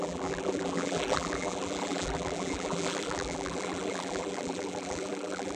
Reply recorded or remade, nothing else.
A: remade